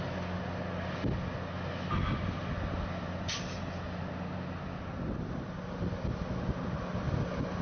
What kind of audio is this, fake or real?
real